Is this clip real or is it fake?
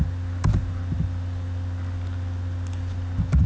real